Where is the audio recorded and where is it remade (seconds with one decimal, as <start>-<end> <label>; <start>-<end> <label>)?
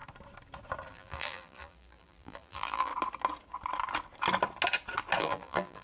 0.0-0.9 recorded; 0.9-2.9 remade; 2.9-5.2 recorded; 5.2-5.8 remade